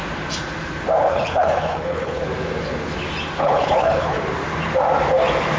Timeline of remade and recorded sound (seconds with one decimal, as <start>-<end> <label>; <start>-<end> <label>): 0.0-1.0 recorded; 1.0-2.2 remade; 2.2-3.4 recorded; 3.4-4.2 remade; 4.2-5.6 recorded